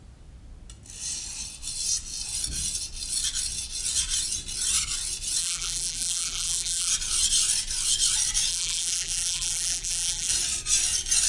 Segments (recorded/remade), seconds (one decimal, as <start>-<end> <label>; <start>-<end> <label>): 0.0-5.4 recorded; 5.4-6.9 remade; 6.9-8.5 recorded; 8.5-10.3 remade; 10.3-11.3 recorded